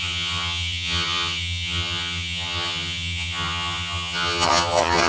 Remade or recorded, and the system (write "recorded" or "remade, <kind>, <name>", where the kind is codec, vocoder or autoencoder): remade, vocoder, HiFi-GAN